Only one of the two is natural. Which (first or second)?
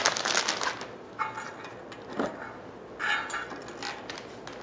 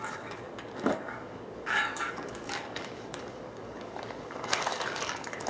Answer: first